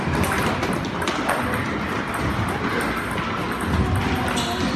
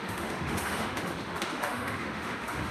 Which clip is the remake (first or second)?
second